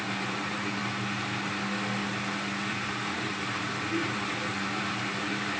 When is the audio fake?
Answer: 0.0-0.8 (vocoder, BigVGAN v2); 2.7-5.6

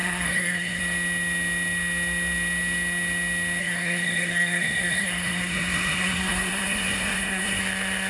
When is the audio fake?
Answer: 0.0-0.8 (codec, SNAC); 3.6-7.6

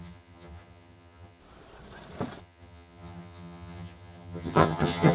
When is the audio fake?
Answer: 0.0-1.4 (vocoder, HiFi-GAN); 2.4-5.1

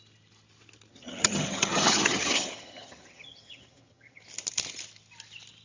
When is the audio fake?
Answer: 0.9-4.2 (vocoder, HiFi-GAN)

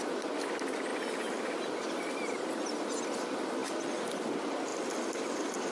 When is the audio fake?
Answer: none

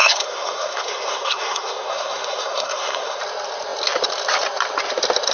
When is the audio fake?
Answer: 0.0-3.2 (codec, SNAC)

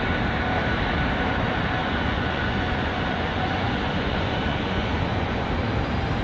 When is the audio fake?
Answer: 1.8-5.5 (vocoder, Vocos)